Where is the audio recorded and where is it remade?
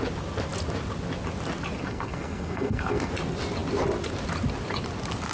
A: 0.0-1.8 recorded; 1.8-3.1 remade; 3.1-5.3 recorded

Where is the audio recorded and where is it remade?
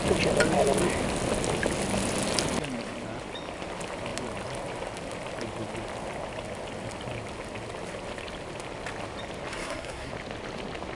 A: 0.0-9.5 recorded; 9.5-10.1 remade; 10.1-11.0 recorded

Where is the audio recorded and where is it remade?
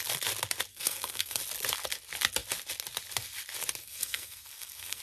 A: 0.0-0.7 recorded; 0.7-1.4 remade; 1.4-3.8 recorded; 3.8-5.0 remade